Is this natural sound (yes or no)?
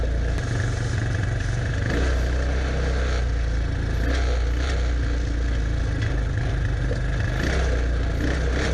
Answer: yes